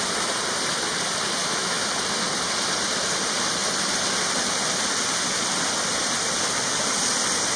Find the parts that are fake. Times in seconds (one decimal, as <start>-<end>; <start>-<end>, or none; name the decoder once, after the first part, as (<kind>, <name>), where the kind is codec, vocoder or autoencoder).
1.4-1.9 (autoencoder, DAC-VAE)